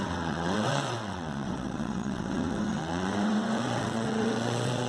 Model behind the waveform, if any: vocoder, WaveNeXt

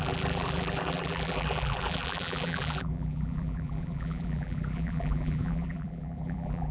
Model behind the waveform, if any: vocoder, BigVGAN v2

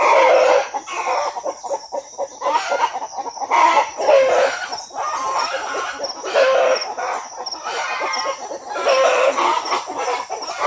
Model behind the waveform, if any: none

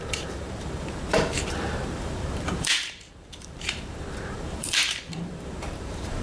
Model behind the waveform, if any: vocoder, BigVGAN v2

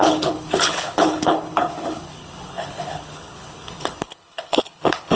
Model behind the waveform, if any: codec, HILCodec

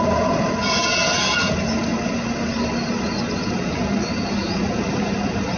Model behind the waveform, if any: none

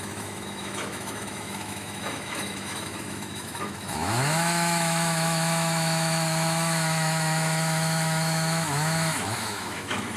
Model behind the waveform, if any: autoencoder, DAC-VAE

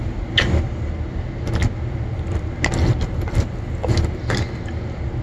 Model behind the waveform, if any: none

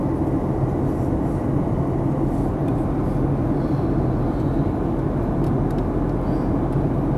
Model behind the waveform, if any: none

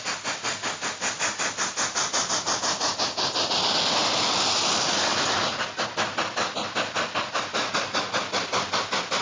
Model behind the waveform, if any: none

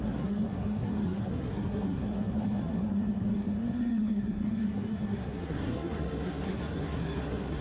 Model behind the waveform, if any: codec, SNAC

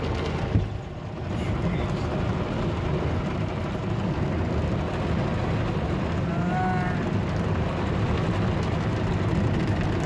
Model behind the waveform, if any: none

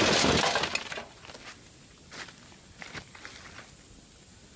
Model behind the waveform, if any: none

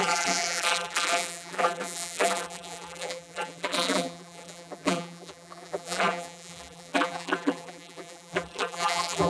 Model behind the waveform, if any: vocoder, BigVGAN v2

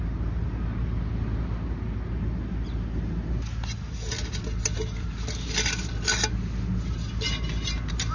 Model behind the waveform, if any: none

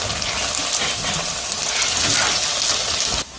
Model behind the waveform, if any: none